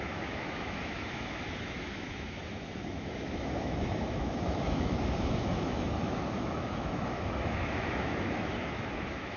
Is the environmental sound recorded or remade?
remade